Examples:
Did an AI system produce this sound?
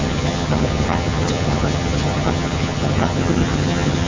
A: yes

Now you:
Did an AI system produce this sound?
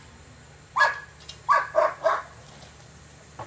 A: no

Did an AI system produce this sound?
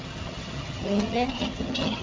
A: yes